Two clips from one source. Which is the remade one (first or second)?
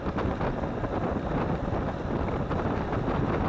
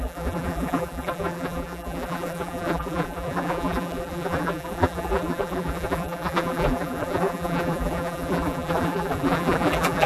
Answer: second